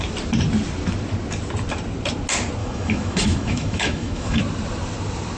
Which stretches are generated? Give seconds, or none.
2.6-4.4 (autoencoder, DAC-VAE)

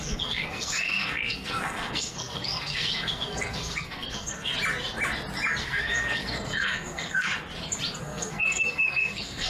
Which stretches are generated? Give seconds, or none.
0.0-4.5 (codec, SNAC); 5.6-7.3; 8.0-9.5

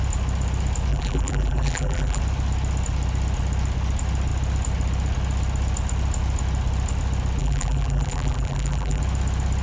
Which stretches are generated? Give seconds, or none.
0.9-2.2 (vocoder, BigVGAN v2); 7.4-9.0

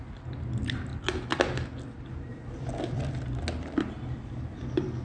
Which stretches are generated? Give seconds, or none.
none

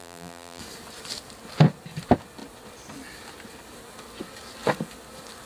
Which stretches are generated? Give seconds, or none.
0.0-0.6 (vocoder, BigVGAN v2)

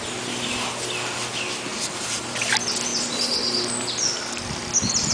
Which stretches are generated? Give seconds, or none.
1.7-2.5 (vocoder, BigVGAN v2)

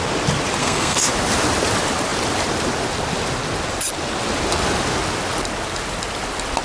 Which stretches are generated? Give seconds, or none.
0.6-1.1 (codec, SNAC)